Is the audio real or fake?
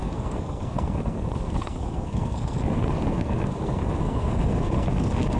fake